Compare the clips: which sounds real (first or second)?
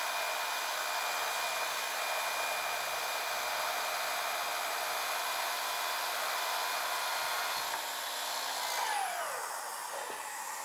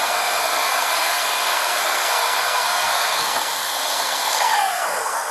first